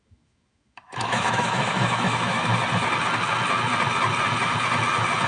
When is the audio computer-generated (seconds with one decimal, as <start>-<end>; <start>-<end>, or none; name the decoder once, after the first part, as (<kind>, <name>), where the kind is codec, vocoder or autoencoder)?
0.0-2.5 (autoencoder, DAC-VAE)